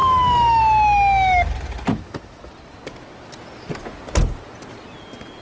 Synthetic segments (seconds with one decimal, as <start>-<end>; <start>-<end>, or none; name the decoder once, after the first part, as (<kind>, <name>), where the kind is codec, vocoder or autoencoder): 0.0-0.6 (autoencoder, DAC-VAE); 1.9-2.5